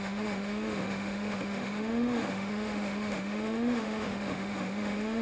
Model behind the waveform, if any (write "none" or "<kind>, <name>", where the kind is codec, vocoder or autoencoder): autoencoder, DAC-VAE